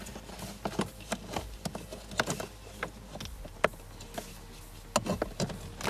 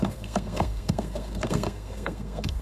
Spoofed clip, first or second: second